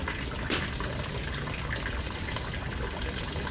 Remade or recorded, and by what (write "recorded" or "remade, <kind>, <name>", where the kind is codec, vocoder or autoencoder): recorded